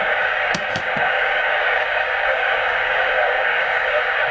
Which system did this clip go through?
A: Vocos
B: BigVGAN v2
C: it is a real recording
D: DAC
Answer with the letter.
D